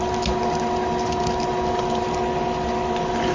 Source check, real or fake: real